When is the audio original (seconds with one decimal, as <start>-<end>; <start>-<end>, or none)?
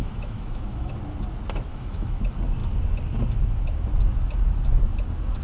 0.9-1.7; 2.2-5.4